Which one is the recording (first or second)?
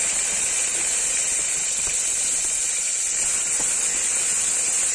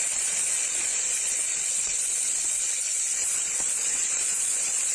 first